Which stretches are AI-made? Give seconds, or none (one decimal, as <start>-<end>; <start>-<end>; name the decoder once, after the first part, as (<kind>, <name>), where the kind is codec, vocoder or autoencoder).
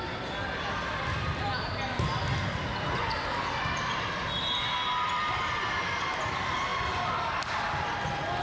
none